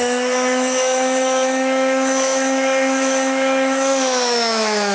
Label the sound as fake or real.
fake